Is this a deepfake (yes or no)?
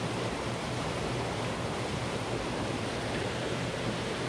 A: yes